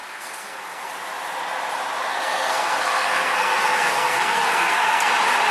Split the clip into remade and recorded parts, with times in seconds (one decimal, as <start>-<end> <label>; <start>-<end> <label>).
0.0-0.9 remade; 0.9-2.1 recorded; 2.1-5.1 remade; 5.1-5.5 recorded